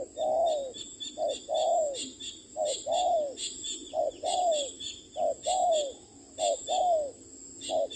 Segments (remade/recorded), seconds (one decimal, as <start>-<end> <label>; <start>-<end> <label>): 0.0-3.8 recorded; 3.8-4.4 remade; 4.4-8.0 recorded